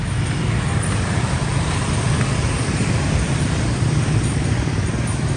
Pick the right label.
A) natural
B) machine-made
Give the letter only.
B